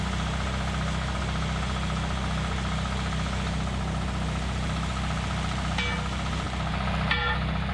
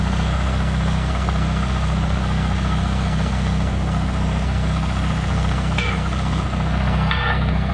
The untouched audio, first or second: first